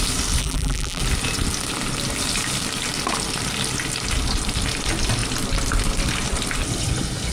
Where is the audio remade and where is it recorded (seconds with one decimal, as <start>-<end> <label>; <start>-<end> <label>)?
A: 0.0-0.4 recorded; 0.4-1.0 remade; 1.0-7.3 recorded